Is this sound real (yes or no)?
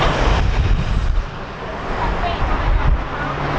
yes